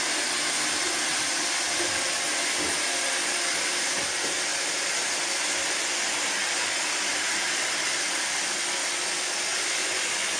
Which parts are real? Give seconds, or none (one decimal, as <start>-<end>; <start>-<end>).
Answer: 0.0-9.8